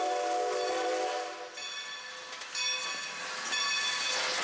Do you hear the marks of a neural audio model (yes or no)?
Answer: no